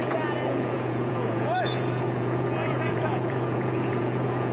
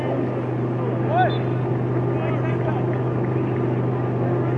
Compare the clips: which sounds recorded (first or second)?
second